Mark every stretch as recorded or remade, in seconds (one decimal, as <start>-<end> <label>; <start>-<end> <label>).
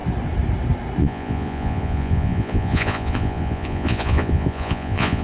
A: 0.0-1.0 recorded; 1.0-5.2 remade